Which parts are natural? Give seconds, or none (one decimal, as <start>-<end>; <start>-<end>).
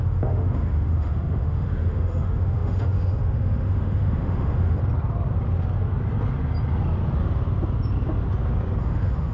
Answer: 4.8-8.8